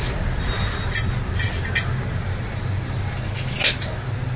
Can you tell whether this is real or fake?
real